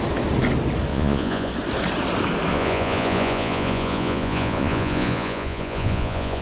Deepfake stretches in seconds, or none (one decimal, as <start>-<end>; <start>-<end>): 0.9-1.5; 2.5-6.4